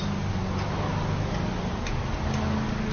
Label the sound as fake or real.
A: real